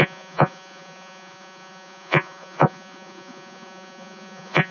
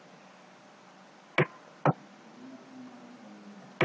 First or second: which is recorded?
second